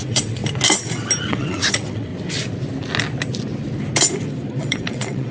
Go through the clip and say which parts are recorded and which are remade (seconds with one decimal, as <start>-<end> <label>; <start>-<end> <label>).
0.0-0.4 remade; 0.4-1.2 recorded; 1.2-2.1 remade; 2.1-4.6 recorded; 4.6-5.3 remade